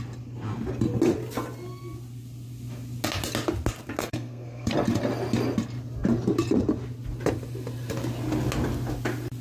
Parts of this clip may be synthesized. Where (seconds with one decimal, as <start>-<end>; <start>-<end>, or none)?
4.0-4.7